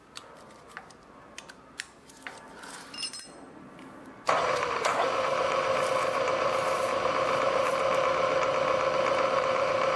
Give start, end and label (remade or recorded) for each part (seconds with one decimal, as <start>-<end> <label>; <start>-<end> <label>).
0.0-7.9 remade; 7.9-9.1 recorded; 9.1-10.0 remade